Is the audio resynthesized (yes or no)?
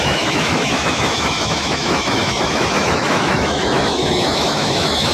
yes